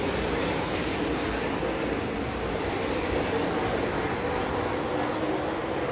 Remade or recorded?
recorded